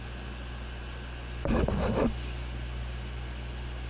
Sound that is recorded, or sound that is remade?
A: recorded